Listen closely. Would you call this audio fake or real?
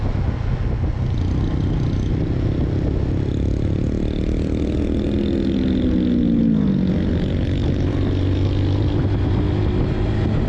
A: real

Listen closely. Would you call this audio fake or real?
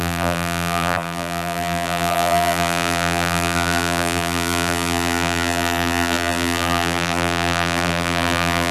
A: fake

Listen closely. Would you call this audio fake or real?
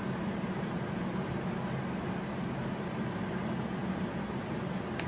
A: fake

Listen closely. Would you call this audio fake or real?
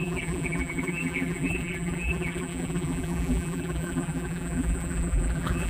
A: fake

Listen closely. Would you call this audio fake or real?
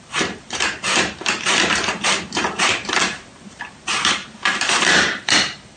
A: fake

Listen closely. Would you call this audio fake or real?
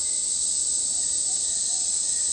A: real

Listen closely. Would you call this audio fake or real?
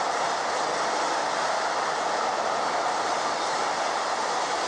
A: real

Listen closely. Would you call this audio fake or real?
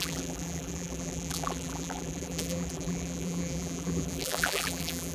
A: fake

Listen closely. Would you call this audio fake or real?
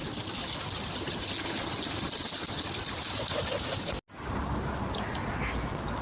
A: real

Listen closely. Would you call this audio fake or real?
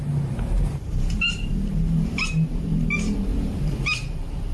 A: fake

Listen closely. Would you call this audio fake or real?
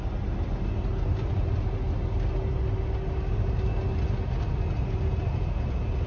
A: real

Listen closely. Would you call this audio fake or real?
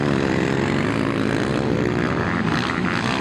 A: real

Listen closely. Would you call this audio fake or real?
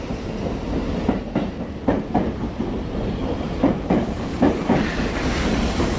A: fake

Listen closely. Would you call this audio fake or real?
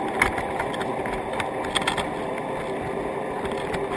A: real